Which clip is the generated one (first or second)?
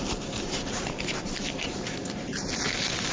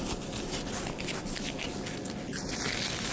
first